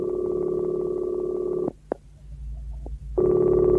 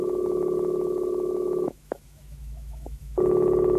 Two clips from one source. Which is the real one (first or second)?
first